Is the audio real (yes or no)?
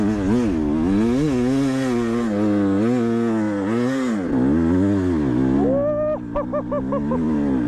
yes